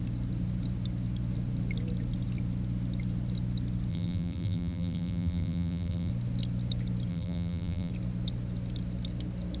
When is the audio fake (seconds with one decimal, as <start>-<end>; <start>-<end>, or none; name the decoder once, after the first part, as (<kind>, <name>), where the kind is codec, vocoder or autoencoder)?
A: 3.9-6.1 (vocoder, BigVGAN v2); 7.1-7.9